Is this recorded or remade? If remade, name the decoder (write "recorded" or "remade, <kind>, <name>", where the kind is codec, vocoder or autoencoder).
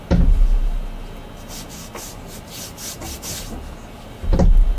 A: recorded